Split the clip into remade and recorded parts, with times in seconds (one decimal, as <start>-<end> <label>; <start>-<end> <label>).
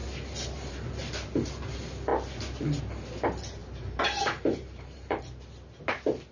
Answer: 0.0-3.6 recorded; 3.6-5.2 remade; 5.2-6.3 recorded